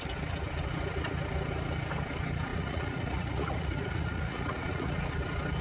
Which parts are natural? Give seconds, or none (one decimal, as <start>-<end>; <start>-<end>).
0.0-2.5; 5.0-5.6